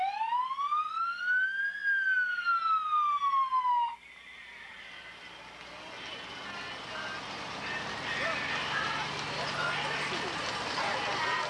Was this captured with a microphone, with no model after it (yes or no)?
yes